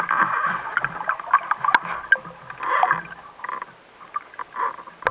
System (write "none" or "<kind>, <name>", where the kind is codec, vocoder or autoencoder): none